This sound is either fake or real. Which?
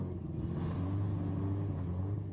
real